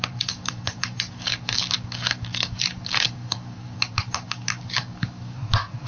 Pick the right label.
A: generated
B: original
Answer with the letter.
A